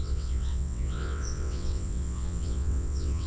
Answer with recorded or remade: remade